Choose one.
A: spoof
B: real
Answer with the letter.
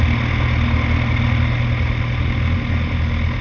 B